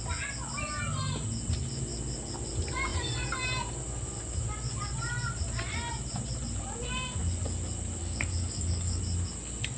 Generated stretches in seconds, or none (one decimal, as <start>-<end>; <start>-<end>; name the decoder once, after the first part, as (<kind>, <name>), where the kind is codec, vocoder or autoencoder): 8.0-9.0 (codec, DAC)